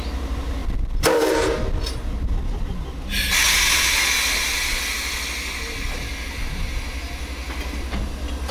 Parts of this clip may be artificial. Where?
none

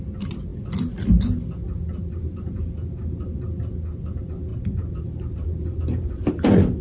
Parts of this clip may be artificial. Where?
none

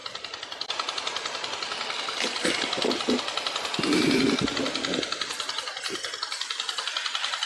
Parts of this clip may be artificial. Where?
none